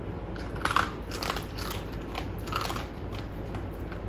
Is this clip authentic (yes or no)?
yes